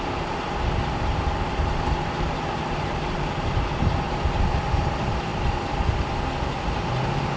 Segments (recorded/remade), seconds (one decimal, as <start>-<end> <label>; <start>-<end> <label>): 0.0-7.4 recorded